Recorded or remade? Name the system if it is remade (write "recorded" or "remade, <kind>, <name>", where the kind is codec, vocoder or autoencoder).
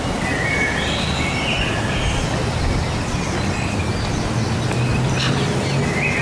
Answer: recorded